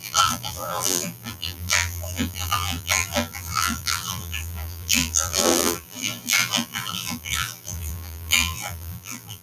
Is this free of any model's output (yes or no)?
no